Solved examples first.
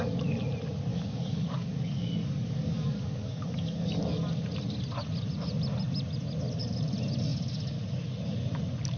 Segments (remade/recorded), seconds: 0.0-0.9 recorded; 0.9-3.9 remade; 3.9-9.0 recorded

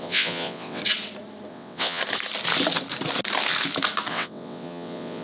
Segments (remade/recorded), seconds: 0.0-0.8 remade; 0.8-1.5 recorded; 1.5-2.0 remade; 2.0-4.1 recorded; 4.1-5.2 remade

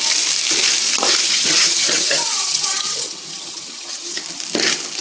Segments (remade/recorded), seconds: 0.0-1.2 recorded; 1.2-4.2 remade; 4.2-5.0 recorded